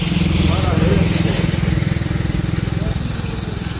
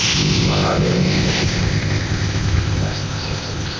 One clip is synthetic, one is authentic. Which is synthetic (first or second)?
second